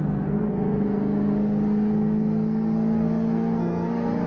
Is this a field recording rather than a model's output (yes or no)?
no